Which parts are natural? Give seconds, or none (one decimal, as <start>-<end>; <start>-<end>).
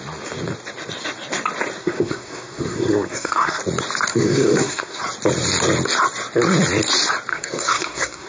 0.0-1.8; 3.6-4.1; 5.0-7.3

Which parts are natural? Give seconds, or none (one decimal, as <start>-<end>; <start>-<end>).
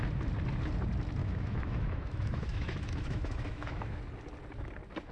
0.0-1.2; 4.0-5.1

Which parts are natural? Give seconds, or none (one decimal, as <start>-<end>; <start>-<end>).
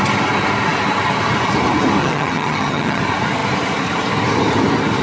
0.0-2.0; 3.0-5.0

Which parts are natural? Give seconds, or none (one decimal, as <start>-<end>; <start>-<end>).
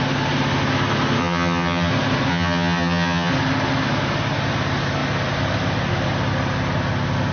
0.0-1.2; 1.9-2.3; 3.3-7.3